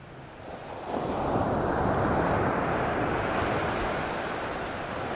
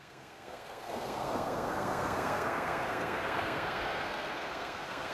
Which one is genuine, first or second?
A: first